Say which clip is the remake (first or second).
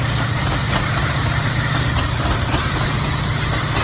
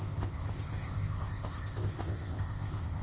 second